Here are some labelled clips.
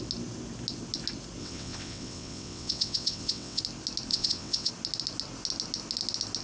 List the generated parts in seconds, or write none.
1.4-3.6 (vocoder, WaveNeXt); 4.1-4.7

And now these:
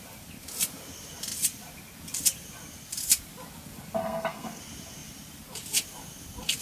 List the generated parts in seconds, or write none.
4.0-4.6 (codec, SNAC)

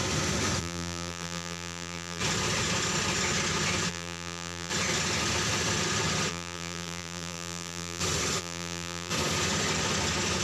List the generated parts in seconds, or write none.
0.6-2.2 (vocoder, BigVGAN v2); 3.9-4.7; 6.3-8.0; 8.4-9.1

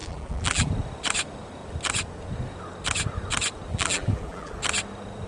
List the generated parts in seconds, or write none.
0.0-0.7 (vocoder, BigVGAN v2); 3.7-4.5

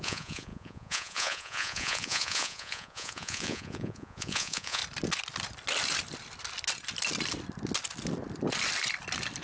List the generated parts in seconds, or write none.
0.0-4.8 (vocoder, Vocos)

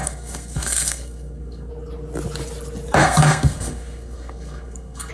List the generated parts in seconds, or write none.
0.0-1.7 (codec, SNAC); 3.0-5.1

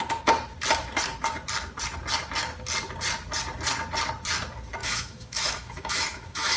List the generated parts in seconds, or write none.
4.8-6.6 (autoencoder, DAC-VAE)

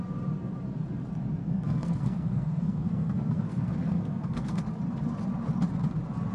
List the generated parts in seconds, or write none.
1.4-4.6 (codec, SNAC)